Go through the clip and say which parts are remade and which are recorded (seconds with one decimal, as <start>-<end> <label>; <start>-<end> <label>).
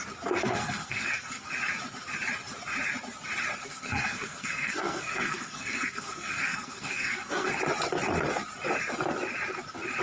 0.0-0.4 recorded; 0.4-1.5 remade; 1.5-3.6 recorded; 3.6-7.6 remade; 7.6-10.0 recorded